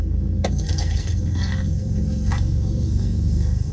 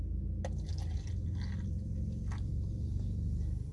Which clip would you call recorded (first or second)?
second